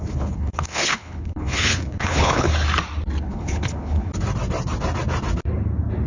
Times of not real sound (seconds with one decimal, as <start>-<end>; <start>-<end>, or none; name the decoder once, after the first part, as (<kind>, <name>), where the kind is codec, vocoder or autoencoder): 0.0-2.5 (codec, HILCodec); 3.2-4.1